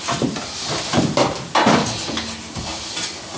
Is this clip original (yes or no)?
yes